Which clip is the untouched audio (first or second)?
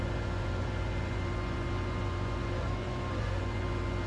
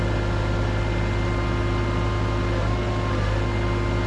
second